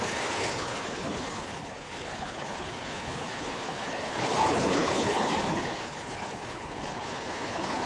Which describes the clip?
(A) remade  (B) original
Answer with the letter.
A